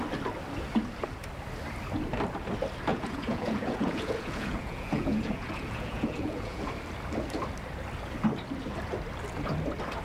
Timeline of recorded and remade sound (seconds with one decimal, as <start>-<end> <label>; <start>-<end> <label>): 0.0-2.9 recorded; 2.9-6.7 remade; 6.7-10.0 recorded